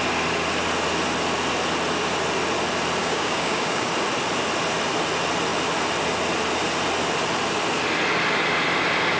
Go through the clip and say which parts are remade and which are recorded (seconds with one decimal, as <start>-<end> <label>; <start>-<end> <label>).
0.0-3.0 recorded; 3.0-3.9 remade; 3.9-9.2 recorded